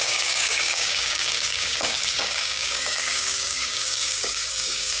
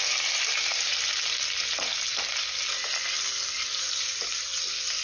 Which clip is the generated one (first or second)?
first